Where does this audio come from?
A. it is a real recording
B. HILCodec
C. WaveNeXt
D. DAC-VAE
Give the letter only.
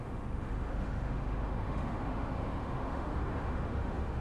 D